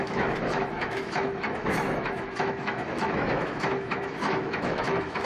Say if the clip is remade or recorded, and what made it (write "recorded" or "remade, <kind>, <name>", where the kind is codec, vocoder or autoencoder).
remade, autoencoder, DAC-VAE